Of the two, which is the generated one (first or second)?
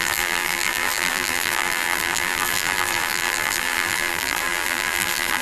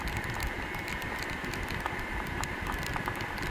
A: first